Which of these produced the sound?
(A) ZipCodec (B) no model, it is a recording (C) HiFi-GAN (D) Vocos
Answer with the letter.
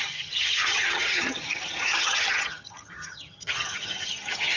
C